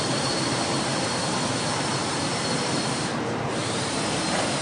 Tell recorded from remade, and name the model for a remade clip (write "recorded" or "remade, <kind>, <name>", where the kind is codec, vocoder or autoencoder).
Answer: remade, vocoder, BigVGAN v2